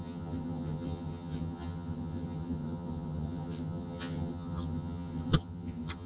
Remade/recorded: remade